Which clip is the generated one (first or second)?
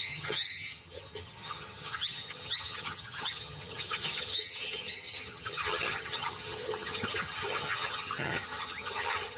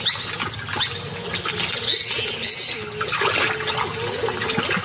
first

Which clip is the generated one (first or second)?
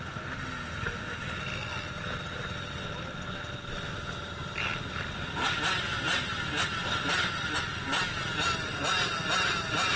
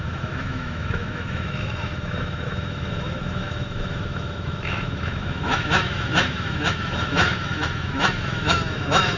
second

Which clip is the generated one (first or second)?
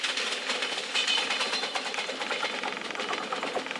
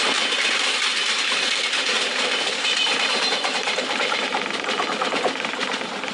second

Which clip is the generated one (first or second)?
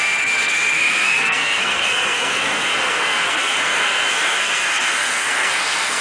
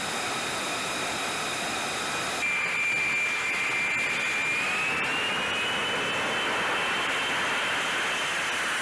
first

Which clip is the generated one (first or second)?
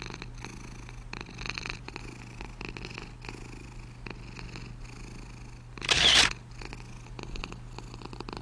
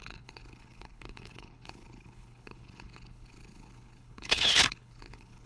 second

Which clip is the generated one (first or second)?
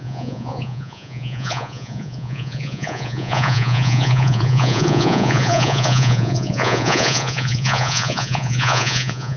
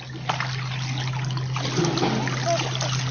first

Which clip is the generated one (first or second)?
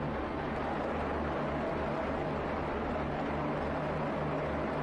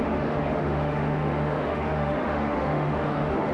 second